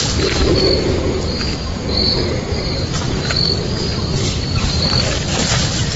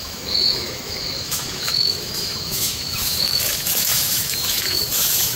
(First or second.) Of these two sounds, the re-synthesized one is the second